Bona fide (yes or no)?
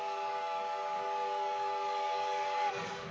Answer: no